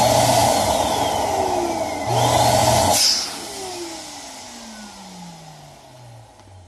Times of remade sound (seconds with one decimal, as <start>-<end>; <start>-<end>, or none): none